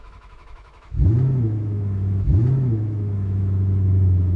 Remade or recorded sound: remade